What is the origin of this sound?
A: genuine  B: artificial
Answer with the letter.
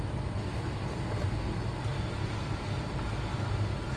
A